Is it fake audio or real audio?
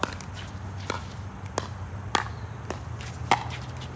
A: real